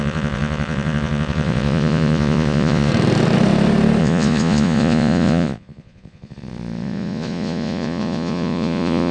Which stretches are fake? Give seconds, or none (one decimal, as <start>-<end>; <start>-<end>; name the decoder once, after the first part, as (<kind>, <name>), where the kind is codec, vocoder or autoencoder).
0.0-2.9 (vocoder, Vocos); 4.0-9.1